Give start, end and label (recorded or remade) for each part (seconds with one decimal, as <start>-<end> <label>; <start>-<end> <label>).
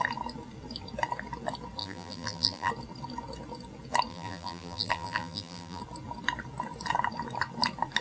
0.0-1.8 recorded; 1.8-2.7 remade; 2.7-4.1 recorded; 4.1-5.8 remade; 5.8-8.0 recorded